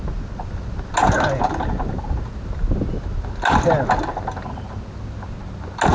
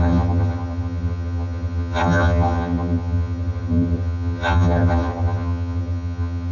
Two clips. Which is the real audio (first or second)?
first